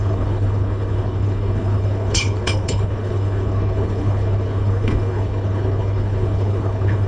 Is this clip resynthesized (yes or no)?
yes